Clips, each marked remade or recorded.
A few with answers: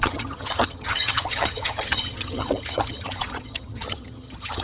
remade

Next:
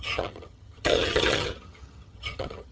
remade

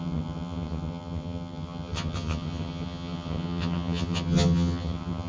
remade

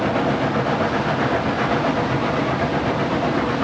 recorded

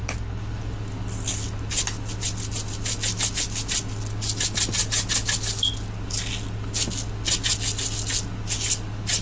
recorded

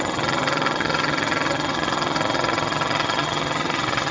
remade